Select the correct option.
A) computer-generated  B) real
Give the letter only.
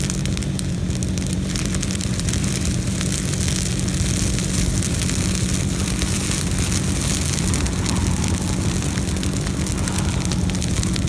B